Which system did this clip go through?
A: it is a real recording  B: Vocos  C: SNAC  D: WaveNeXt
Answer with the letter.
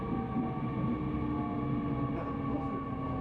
A